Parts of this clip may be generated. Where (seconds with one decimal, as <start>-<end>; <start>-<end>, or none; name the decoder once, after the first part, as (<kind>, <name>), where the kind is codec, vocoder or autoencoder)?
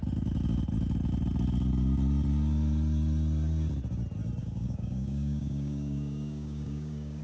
4.4-7.2 (codec, DAC)